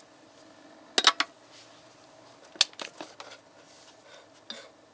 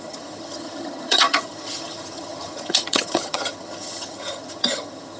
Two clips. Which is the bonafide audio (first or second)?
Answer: first